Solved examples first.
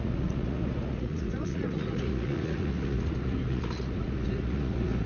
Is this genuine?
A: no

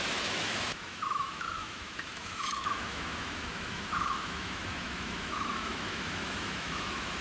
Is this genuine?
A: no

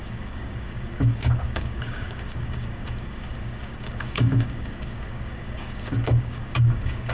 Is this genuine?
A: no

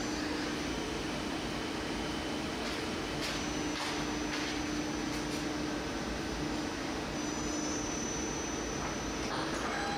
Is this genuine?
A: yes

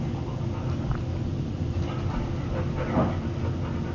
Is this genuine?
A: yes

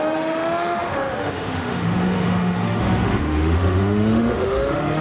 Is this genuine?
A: no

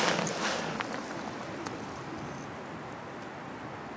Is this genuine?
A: yes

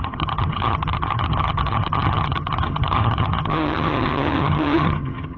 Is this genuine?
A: no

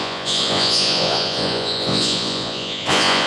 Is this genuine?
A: no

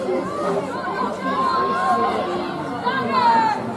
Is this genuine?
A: yes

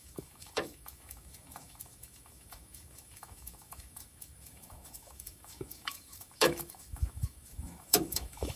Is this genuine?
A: no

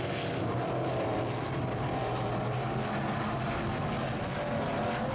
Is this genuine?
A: yes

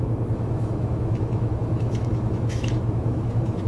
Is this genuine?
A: no